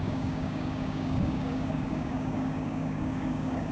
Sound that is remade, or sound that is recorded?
remade